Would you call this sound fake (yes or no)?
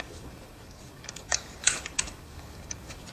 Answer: yes